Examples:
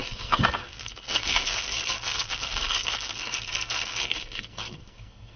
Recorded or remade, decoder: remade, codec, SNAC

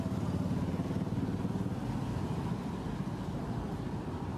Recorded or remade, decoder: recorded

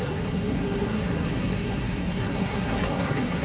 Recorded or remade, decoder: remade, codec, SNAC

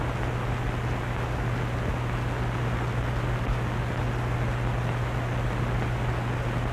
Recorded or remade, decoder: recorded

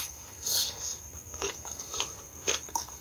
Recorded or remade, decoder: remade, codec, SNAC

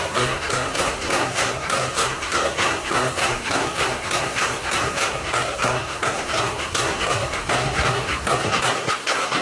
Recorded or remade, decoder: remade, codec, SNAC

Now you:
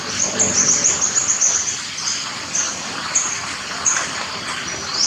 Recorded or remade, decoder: recorded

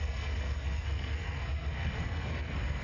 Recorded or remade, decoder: remade, codec, SNAC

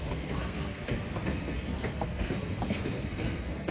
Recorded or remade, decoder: remade, codec, SNAC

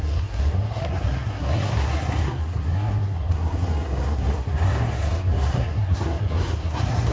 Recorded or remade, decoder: remade, codec, SNAC